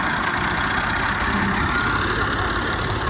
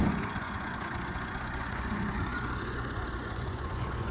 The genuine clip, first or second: first